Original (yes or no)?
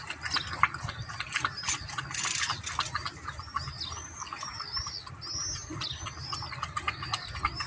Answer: yes